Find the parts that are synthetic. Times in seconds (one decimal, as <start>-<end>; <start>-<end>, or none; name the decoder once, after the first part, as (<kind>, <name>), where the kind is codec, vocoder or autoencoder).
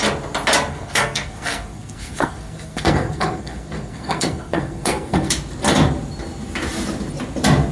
0.7-5.3 (codec, SNAC)